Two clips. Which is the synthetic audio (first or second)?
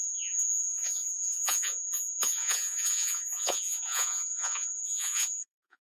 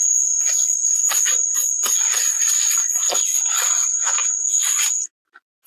first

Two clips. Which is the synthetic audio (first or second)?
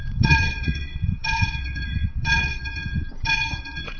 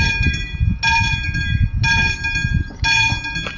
first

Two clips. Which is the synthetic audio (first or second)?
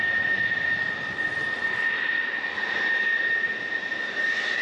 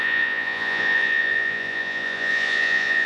second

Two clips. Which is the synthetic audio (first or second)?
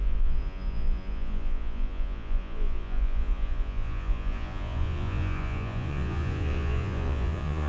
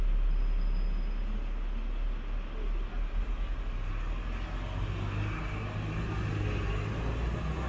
first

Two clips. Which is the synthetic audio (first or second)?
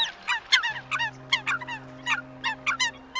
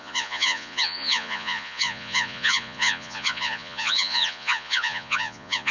second